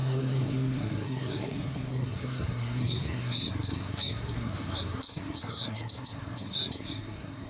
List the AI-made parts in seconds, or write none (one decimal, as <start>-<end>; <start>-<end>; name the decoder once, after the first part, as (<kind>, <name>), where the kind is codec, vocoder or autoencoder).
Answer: 0.0-7.5 (codec, SNAC)